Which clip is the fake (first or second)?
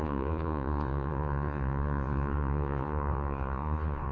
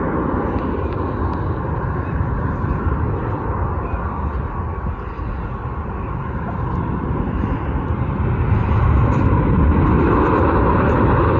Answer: first